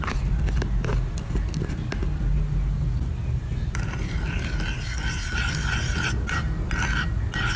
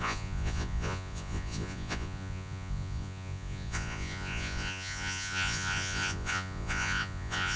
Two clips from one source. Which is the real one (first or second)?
first